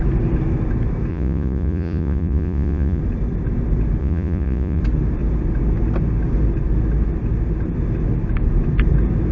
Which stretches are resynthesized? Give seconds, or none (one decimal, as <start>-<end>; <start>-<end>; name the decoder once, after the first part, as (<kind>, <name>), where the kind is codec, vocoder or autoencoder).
1.1-3.0 (vocoder, Vocos); 4.0-4.8